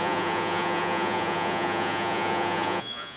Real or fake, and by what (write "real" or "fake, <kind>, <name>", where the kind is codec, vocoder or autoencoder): fake, vocoder, Vocos